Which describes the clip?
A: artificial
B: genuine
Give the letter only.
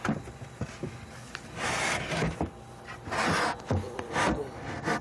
B